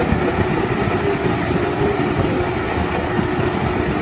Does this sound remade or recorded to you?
recorded